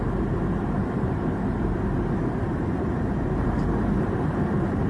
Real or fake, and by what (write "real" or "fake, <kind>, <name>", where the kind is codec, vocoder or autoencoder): fake, vocoder, BigVGAN v2